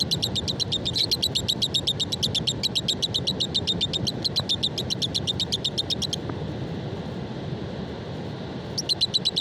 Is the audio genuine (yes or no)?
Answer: yes